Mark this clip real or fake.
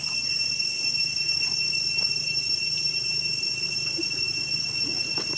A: real